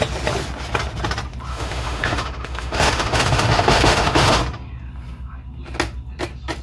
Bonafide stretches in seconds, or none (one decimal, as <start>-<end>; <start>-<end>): 0.0-1.5; 4.4-6.6